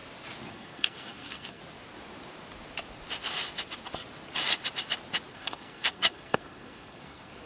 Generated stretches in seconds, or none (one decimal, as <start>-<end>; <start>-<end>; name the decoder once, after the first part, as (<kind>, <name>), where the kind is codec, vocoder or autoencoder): 0.5-1.6 (codec, SNAC); 5.3-7.5